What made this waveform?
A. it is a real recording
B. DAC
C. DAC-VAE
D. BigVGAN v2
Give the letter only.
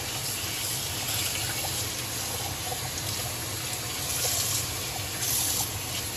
A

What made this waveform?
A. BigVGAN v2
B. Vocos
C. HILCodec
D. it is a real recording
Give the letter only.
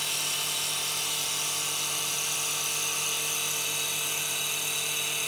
D